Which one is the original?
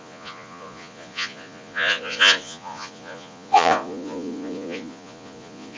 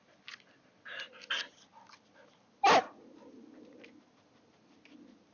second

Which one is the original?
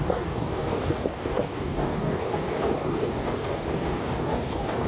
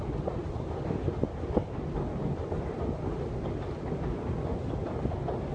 second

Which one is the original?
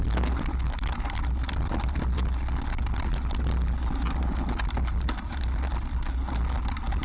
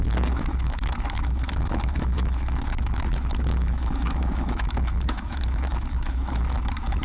first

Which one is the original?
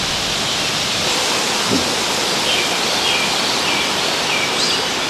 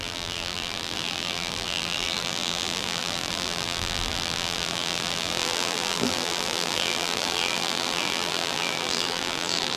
first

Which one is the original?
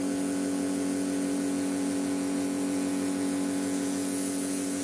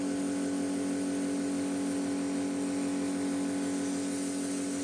second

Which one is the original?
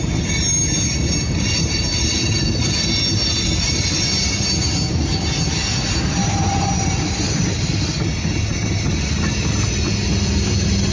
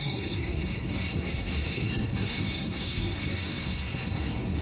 first